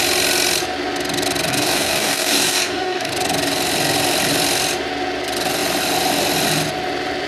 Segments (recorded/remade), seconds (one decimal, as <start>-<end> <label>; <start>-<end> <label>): 0.0-1.5 recorded; 1.5-3.1 remade; 3.1-7.3 recorded